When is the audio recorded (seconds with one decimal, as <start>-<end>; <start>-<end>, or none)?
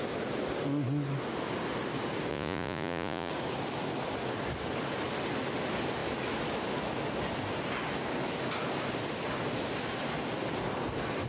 0.0-2.3; 3.3-11.3